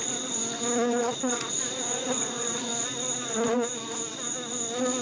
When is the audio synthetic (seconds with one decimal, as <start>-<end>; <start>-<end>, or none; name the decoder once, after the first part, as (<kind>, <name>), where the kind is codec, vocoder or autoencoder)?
0.0-0.4 (vocoder, Vocos); 1.0-2.7